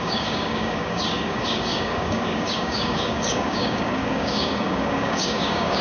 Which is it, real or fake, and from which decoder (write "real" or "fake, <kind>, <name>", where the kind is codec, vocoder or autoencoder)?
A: fake, codec, DAC